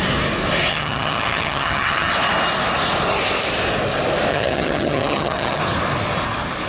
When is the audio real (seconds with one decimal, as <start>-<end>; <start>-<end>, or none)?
0.0-0.7; 2.1-4.3; 5.6-6.7